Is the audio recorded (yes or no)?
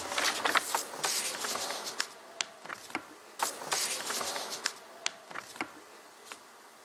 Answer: yes